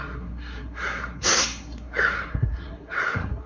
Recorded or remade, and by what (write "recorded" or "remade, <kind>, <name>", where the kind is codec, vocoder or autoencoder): remade, codec, SNAC